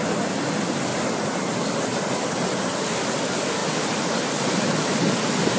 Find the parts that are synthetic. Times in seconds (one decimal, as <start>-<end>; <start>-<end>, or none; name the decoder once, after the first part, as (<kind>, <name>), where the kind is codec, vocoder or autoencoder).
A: none